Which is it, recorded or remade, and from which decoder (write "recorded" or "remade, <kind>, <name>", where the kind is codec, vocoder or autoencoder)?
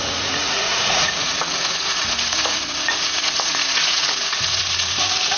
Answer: remade, vocoder, Vocos